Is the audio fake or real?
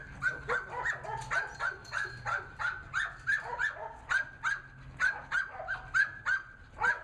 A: real